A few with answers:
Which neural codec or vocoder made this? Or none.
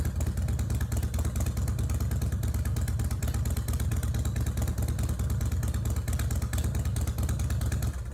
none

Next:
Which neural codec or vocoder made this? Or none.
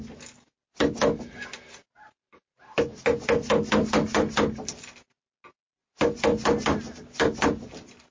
none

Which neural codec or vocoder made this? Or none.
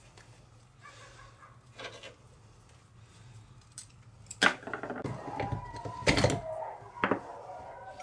none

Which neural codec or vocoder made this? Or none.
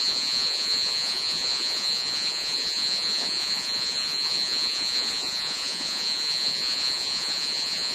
vocoder, Vocos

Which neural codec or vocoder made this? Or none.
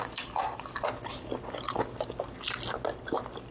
none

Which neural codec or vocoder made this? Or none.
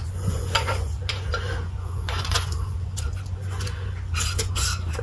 vocoder, Vocos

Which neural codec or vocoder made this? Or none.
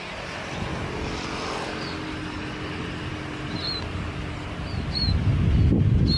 none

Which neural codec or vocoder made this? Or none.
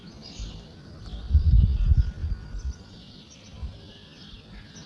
none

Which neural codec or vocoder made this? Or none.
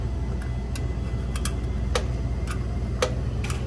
none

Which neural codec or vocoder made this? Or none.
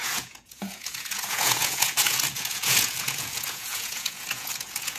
vocoder, Vocos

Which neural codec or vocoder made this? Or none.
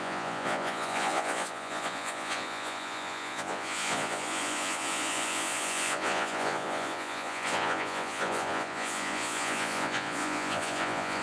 vocoder, Vocos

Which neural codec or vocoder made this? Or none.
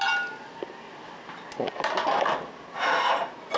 none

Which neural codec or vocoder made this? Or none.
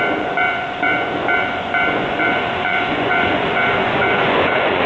vocoder, Vocos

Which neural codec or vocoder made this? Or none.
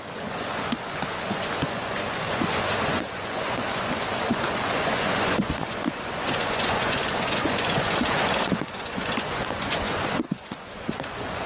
vocoder, Vocos